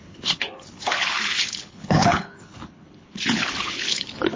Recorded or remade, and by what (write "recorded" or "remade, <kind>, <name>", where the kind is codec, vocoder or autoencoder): remade, codec, HILCodec